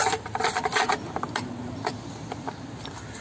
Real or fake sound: real